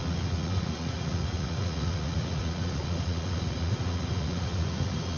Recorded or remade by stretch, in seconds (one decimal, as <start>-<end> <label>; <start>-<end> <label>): 0.0-5.2 remade